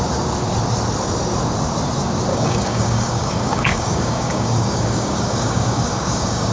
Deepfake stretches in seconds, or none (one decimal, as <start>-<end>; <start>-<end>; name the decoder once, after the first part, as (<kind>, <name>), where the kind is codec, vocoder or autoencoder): 2.3-6.5 (codec, DAC)